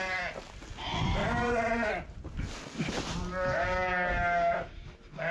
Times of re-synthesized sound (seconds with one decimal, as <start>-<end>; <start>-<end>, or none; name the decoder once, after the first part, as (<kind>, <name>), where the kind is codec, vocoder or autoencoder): 1.2-1.9 (vocoder, BigVGAN v2)